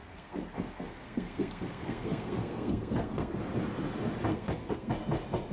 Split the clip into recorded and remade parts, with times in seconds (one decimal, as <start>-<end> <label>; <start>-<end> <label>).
0.0-3.3 remade; 3.3-4.3 recorded; 4.3-4.9 remade; 4.9-5.5 recorded